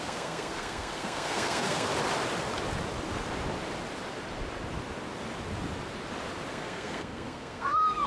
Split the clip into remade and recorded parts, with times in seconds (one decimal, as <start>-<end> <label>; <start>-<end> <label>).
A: 0.0-1.9 remade; 1.9-6.5 recorded; 6.5-8.1 remade